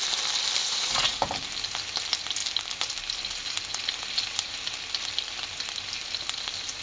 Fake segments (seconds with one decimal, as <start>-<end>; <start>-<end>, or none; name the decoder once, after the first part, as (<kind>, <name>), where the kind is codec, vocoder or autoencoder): 0.6-1.2 (vocoder, Vocos)